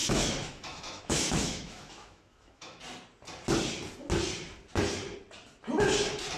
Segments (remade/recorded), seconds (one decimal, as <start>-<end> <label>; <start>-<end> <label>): 0.0-2.8 remade; 2.8-6.4 recorded